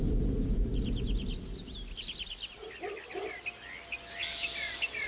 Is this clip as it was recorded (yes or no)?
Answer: yes